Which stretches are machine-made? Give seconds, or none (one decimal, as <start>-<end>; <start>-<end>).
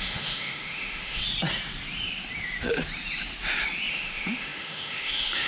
0.0-1.2; 3.9-5.5